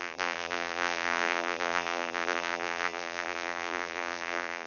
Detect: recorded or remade remade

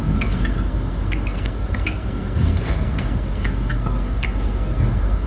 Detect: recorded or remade remade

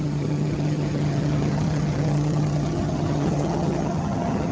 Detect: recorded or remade remade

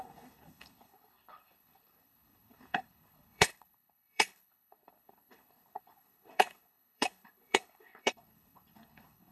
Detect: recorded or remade remade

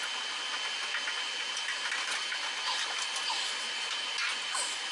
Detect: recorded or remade recorded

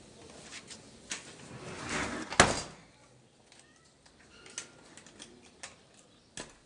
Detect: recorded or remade recorded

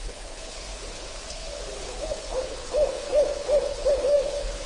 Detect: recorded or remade remade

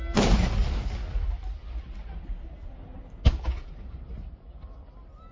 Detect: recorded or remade recorded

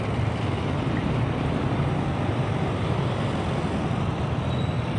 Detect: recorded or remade recorded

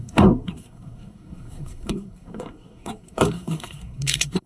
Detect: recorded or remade remade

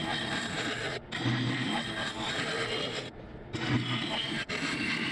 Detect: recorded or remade recorded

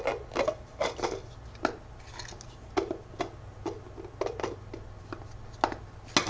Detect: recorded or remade recorded